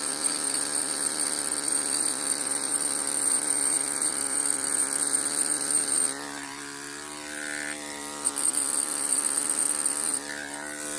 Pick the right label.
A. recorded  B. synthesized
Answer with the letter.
A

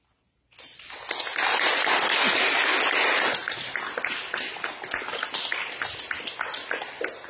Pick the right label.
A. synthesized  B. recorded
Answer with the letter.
B